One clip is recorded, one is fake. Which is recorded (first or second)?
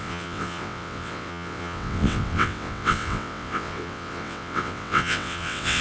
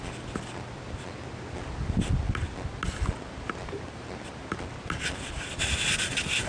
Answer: second